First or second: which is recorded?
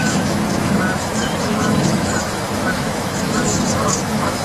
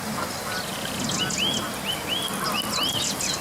second